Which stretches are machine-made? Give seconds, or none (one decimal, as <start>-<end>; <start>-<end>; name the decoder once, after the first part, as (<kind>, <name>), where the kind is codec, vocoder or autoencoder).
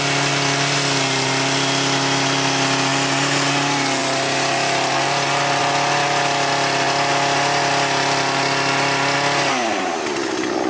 none